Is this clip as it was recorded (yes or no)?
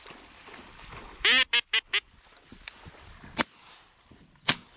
yes